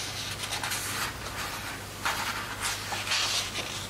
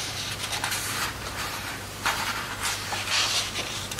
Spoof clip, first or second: second